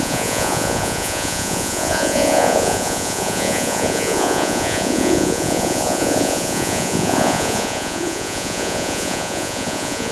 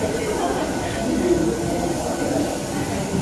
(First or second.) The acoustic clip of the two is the second